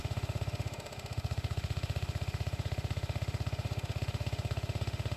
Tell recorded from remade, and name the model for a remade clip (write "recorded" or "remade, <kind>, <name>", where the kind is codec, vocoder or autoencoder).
remade, autoencoder, DAC-VAE